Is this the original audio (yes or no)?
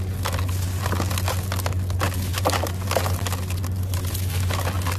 yes